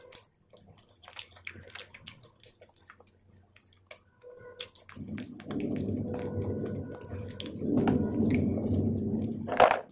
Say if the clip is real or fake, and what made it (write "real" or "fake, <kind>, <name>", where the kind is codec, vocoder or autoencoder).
real